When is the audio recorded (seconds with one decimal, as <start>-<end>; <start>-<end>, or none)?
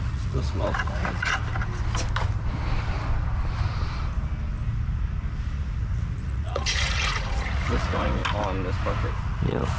1.4-5.8; 8.2-9.1